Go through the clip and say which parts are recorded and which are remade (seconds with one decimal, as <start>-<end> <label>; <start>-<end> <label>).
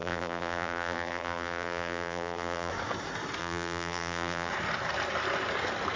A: 0.0-2.7 remade; 2.7-3.4 recorded; 3.4-4.5 remade; 4.5-6.0 recorded